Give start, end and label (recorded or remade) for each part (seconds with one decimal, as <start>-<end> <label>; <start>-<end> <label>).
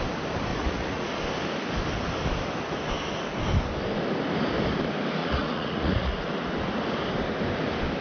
0.0-0.5 recorded; 0.5-1.1 remade; 1.1-5.2 recorded; 5.2-6.3 remade; 6.3-8.0 recorded